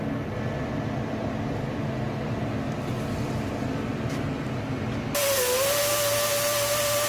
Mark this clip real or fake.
real